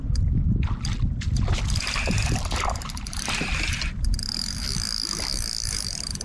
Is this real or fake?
real